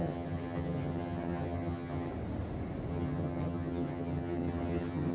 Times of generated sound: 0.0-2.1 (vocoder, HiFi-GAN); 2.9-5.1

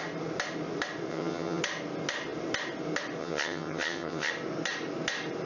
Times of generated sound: 1.1-1.6 (vocoder, HiFi-GAN); 3.2-4.3

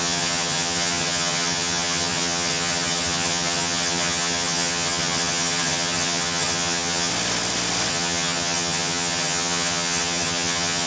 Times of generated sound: 0.0-7.1 (vocoder, HiFi-GAN); 7.9-10.9

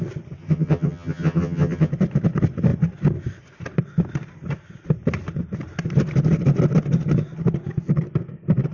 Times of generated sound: 0.4-1.9 (vocoder, HiFi-GAN)

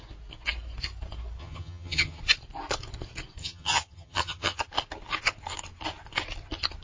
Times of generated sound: 1.4-2.2 (vocoder, HiFi-GAN); 3.4-4.7

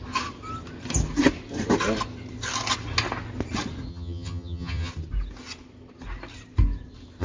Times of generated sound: 3.9-4.9 (vocoder, HiFi-GAN)